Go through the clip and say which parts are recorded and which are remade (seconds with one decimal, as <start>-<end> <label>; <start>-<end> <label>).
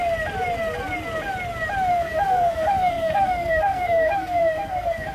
0.0-1.9 recorded; 1.9-5.1 remade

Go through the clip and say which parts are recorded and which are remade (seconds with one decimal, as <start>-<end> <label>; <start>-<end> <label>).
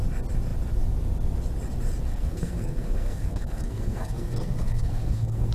0.0-2.1 recorded; 2.1-5.5 remade